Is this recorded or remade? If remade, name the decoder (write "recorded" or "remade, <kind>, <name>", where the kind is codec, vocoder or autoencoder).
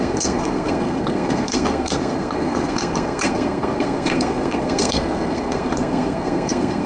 remade, codec, SNAC